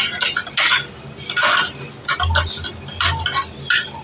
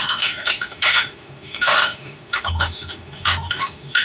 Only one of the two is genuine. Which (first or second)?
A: first